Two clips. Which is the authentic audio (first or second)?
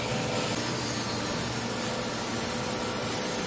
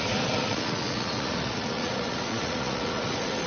first